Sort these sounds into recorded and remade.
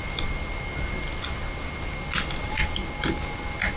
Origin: recorded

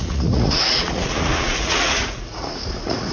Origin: remade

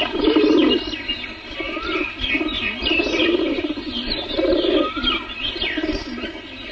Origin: recorded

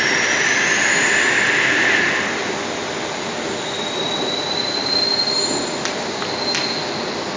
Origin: recorded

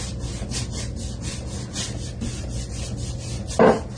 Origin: recorded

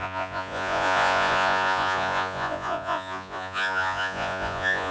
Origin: remade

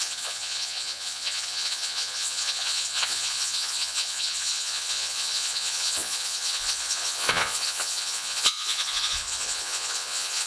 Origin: remade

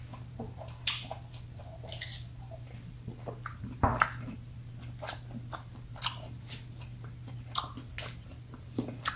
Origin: recorded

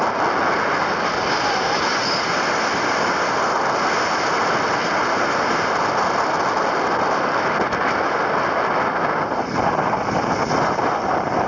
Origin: recorded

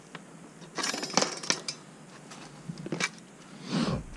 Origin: recorded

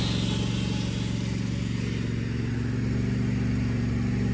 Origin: recorded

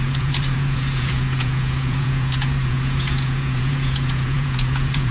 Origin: remade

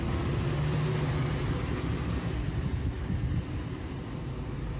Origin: recorded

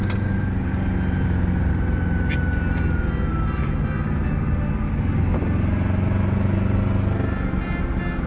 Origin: recorded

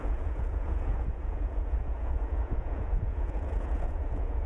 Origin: remade